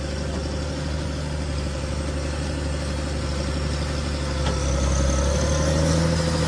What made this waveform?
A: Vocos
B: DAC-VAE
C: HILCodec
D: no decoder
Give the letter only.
D